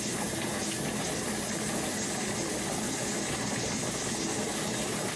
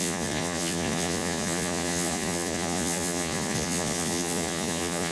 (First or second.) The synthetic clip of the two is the second